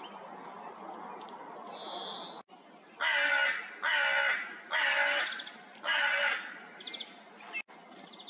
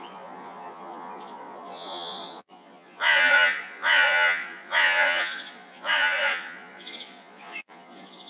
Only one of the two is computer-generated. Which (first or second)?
second